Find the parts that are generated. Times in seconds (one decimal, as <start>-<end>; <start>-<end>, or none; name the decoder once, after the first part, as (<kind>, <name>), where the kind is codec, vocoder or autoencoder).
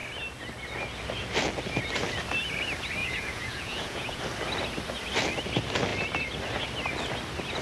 3.0-4.2 (vocoder, Vocos)